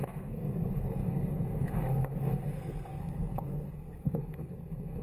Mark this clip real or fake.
fake